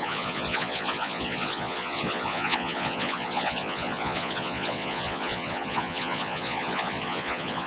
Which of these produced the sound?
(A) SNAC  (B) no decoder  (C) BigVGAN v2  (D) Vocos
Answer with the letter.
D